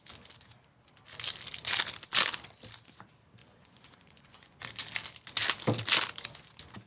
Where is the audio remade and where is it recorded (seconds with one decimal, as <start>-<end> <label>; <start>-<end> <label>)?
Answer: 0.0-3.4 recorded; 3.4-4.7 remade; 4.7-6.9 recorded